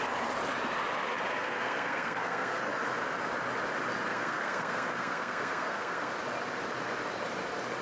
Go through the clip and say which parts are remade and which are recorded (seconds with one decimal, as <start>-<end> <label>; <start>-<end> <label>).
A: 0.0-1.4 recorded; 1.4-2.7 remade; 2.7-4.1 recorded; 4.1-6.1 remade; 6.1-7.8 recorded